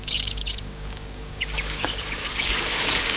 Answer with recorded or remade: remade